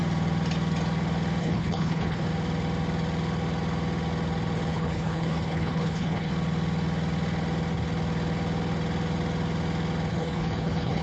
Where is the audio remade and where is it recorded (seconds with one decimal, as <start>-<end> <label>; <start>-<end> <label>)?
0.0-1.4 recorded; 1.4-2.3 remade; 2.3-4.7 recorded; 4.7-6.3 remade; 6.3-10.1 recorded; 10.1-11.0 remade